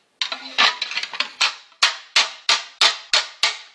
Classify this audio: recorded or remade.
recorded